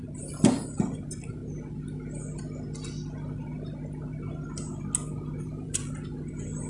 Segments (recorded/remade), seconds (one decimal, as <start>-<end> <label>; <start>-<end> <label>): 0.0-1.4 remade; 1.4-5.4 recorded; 5.4-6.7 remade